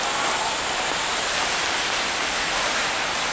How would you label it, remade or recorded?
recorded